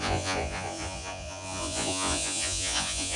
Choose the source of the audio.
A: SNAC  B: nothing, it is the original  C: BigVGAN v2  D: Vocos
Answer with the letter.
D